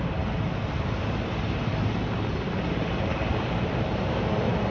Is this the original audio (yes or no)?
yes